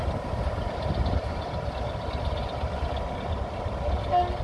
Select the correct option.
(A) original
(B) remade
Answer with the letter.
A